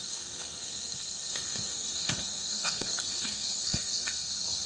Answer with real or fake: fake